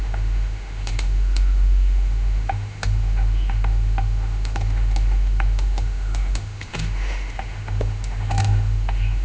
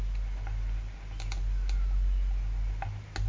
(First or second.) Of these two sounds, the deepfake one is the first